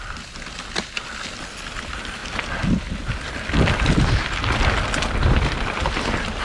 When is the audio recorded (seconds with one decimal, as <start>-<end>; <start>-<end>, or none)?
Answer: 0.0-6.4